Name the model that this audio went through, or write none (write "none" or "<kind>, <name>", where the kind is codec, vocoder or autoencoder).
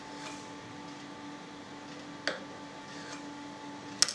none